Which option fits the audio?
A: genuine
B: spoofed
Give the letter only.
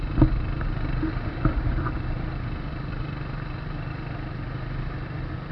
A